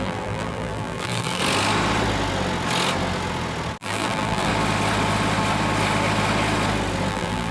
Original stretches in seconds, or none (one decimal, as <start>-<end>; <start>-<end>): 1.4-3.8; 4.5-7.1